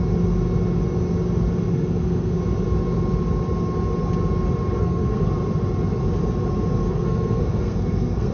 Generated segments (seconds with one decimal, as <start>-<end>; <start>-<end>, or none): 1.7-2.4; 4.8-5.3; 6.8-8.3